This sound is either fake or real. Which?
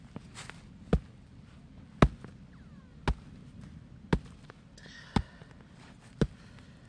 real